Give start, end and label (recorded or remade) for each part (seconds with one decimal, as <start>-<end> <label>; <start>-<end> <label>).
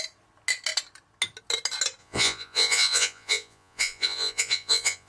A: 0.0-2.0 recorded; 2.0-5.1 remade